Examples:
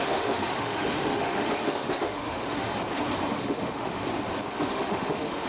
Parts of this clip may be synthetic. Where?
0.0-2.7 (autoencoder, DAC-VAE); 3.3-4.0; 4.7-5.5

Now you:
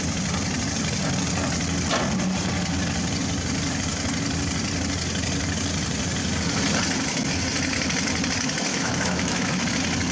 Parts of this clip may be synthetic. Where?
8.7-9.6 (autoencoder, DAC-VAE)

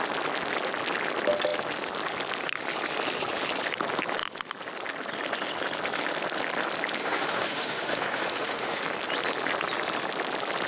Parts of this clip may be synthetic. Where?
7.0-8.8 (autoencoder, DAC-VAE)

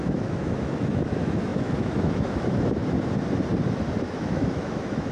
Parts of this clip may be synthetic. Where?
0.0-2.8 (autoencoder, DAC-VAE); 4.0-5.1

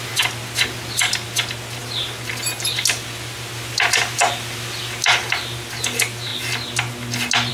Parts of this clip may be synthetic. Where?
none